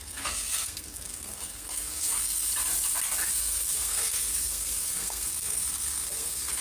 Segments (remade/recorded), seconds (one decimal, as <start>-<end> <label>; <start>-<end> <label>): 0.0-2.5 remade; 2.5-3.3 recorded; 3.3-6.6 remade